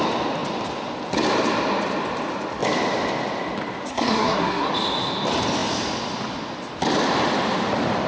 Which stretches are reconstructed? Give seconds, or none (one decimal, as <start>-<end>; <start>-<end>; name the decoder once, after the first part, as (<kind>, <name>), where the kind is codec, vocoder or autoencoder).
3.9-4.7 (codec, SNAC)